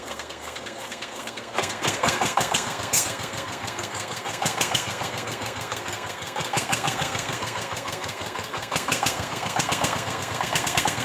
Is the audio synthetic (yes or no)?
yes